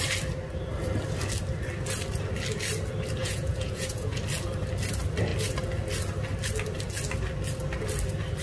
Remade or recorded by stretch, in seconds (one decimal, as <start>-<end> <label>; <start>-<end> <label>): 0.0-3.2 recorded; 3.2-4.2 remade; 4.2-8.4 recorded